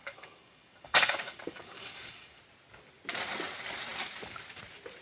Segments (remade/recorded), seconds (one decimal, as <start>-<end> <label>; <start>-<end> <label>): 0.0-2.4 remade; 2.4-5.0 recorded